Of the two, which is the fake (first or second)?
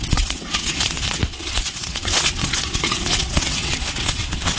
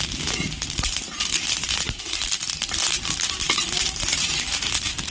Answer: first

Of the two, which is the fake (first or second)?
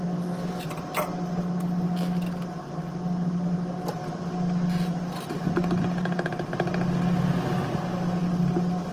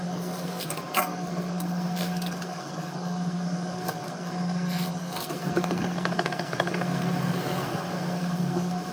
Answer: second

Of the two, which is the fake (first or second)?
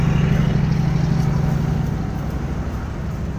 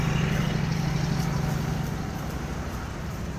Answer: second